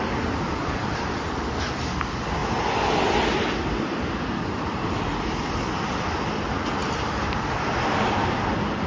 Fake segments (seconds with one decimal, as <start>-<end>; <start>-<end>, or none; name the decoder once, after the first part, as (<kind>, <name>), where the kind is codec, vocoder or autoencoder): none

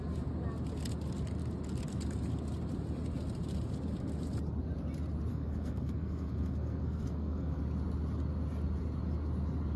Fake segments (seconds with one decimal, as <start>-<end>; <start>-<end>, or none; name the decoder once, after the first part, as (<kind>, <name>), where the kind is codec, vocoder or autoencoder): 5.3-7.6 (codec, SNAC)

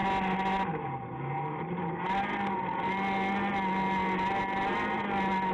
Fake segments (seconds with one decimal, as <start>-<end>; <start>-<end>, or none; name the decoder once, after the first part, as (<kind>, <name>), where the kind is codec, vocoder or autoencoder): none

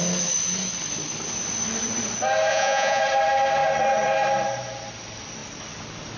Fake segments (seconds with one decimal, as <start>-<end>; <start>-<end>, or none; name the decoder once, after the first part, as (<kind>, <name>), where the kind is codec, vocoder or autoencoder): 2.5-3.0 (vocoder, Vocos)